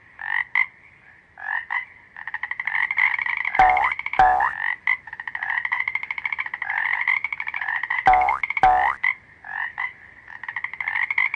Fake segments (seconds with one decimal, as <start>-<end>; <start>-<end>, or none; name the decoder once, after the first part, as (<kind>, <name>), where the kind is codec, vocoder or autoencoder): none